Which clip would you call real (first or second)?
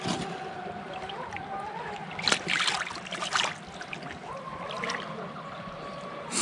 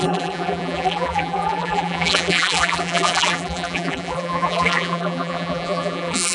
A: first